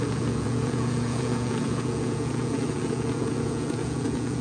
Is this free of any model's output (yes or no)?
no